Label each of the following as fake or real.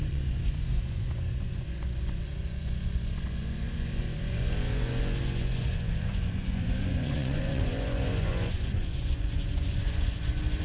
fake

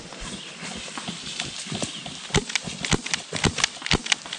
real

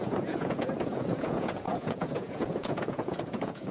fake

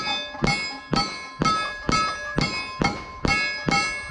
real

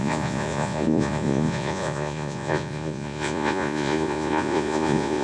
fake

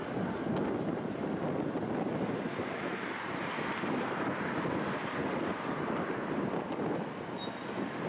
real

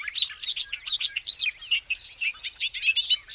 real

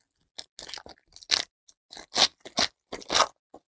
real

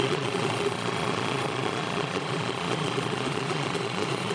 fake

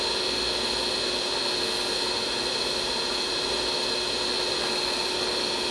real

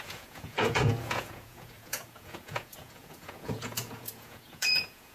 fake